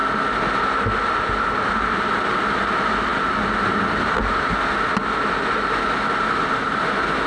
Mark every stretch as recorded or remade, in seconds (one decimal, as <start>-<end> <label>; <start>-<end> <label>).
0.0-7.3 recorded